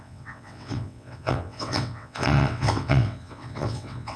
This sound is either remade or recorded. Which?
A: remade